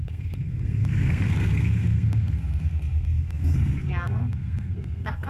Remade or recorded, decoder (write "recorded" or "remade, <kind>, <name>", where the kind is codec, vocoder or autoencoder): remade, codec, SNAC